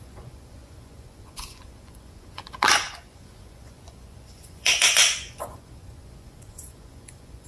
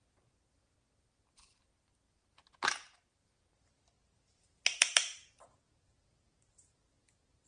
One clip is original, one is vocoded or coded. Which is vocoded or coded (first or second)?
first